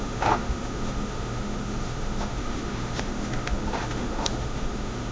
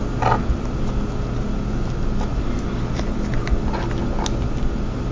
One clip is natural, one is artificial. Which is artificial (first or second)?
first